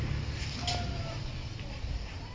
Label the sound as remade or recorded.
recorded